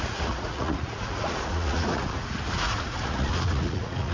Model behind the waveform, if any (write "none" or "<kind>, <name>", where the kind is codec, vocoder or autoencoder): vocoder, Vocos